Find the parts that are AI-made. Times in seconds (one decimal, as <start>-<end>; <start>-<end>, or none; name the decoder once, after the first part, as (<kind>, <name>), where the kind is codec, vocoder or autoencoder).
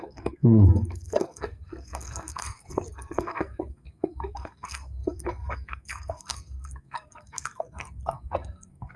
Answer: 0.0-9.0 (codec, SNAC)